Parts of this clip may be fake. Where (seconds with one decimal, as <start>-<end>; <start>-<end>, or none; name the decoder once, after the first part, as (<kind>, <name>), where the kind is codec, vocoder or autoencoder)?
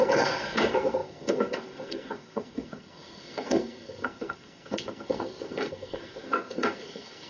0.0-7.3 (codec, SNAC)